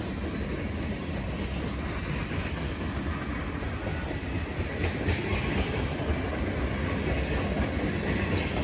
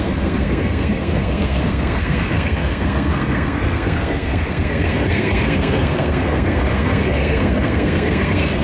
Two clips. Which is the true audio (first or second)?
first